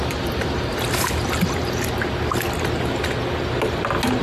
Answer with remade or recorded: recorded